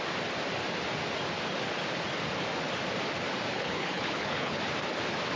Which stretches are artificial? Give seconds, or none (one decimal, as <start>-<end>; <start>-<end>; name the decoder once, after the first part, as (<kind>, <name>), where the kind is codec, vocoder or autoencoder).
3.5-4.6 (codec, HILCodec)